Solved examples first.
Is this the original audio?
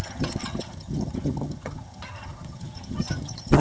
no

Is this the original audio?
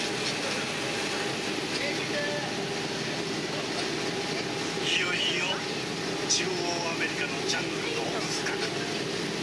yes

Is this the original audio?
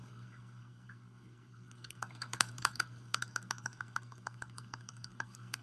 no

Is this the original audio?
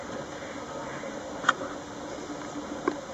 yes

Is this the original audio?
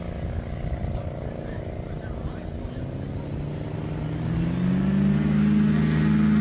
yes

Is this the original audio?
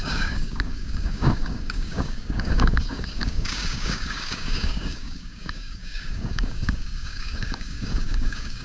no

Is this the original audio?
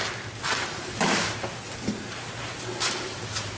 yes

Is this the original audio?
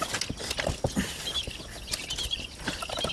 yes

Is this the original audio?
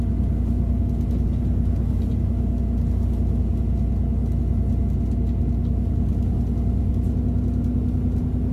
yes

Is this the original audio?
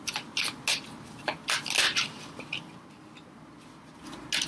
yes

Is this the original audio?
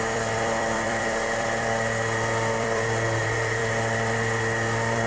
no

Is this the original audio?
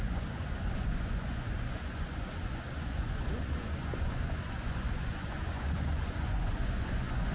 no